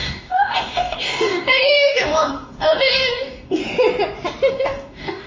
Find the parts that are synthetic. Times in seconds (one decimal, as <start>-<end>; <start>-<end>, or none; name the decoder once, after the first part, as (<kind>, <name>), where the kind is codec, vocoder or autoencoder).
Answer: 0.0-3.6 (codec, DAC); 4.5-5.3